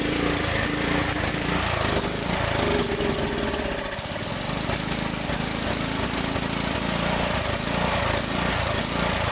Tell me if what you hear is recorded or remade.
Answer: recorded